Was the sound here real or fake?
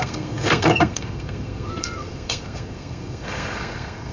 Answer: fake